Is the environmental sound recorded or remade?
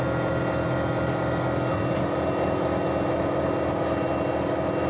recorded